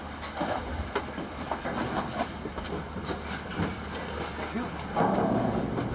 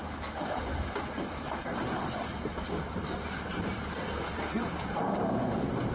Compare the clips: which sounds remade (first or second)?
second